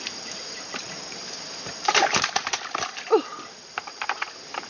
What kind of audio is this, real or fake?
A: fake